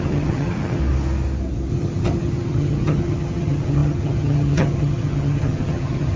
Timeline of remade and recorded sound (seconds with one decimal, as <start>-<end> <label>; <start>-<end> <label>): 0.0-0.8 remade; 0.8-1.7 recorded; 1.7-6.2 remade

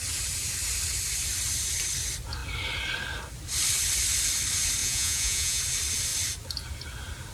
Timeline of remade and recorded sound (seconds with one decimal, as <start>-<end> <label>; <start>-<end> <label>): 0.0-4.8 recorded; 4.8-5.6 remade; 5.6-7.3 recorded

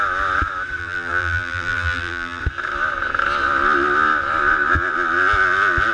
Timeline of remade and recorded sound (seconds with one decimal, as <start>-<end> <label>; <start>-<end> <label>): 0.0-0.8 recorded; 0.8-2.4 remade; 2.4-5.9 recorded

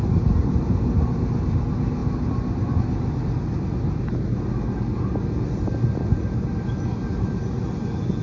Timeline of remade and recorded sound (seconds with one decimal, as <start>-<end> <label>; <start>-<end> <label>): 0.0-8.2 recorded

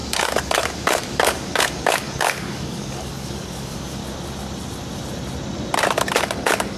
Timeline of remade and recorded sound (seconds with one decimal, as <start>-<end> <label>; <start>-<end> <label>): 0.0-4.0 remade; 4.0-6.2 recorded; 6.2-6.8 remade

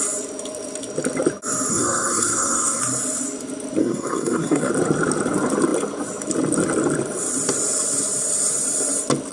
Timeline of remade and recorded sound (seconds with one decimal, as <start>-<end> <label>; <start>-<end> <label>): 0.0-1.7 recorded; 1.7-2.8 remade; 2.8-3.8 recorded; 3.8-4.7 remade; 4.7-9.3 recorded